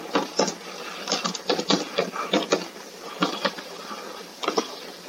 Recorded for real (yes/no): yes